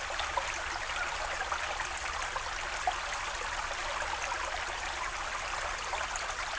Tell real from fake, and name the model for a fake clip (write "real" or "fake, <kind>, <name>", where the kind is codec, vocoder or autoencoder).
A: real